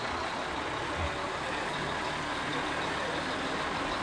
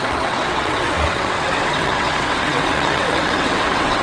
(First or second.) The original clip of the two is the first